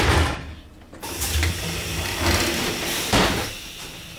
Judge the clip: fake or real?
fake